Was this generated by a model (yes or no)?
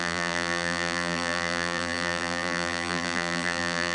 yes